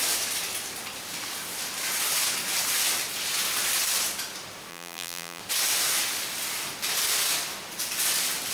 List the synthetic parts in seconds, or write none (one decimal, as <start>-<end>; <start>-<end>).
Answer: 4.7-5.4